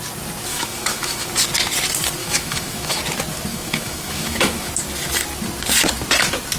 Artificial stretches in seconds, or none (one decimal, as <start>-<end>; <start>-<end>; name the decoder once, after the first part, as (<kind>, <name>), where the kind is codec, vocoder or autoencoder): 0.5-1.3 (autoencoder, DAC-VAE); 2.2-3.0; 3.5-4.7